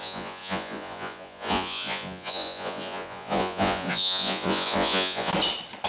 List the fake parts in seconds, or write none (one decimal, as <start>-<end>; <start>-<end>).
0.0-5.3